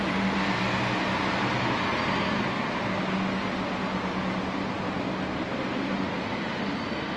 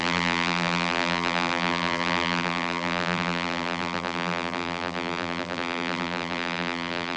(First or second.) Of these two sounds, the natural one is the first